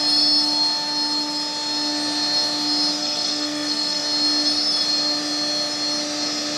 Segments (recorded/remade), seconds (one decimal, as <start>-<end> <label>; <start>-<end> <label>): 0.0-3.0 recorded; 3.0-4.0 remade; 4.0-6.6 recorded